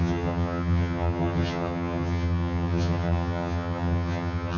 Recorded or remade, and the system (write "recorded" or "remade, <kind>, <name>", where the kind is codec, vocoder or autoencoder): remade, vocoder, HiFi-GAN